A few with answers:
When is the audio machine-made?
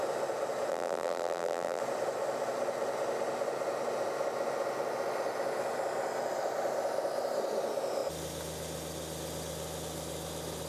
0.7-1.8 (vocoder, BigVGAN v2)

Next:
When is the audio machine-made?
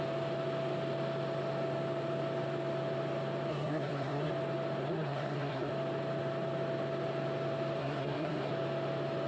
3.5-4.3 (codec, SNAC); 4.8-5.7; 7.8-8.5